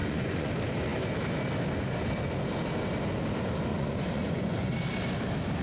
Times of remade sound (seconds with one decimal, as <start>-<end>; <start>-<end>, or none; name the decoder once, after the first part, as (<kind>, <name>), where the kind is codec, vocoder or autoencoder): 0.0-0.5 (vocoder, Vocos); 3.7-4.7